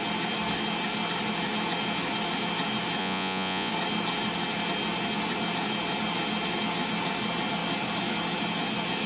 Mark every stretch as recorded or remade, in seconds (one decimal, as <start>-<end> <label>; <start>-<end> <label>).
0.0-3.0 recorded; 3.0-3.7 remade; 3.7-9.1 recorded